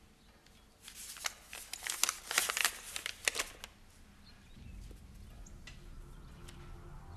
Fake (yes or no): no